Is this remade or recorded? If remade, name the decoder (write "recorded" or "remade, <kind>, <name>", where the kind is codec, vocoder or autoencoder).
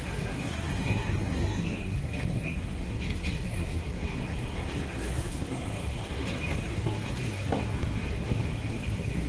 remade, codec, SNAC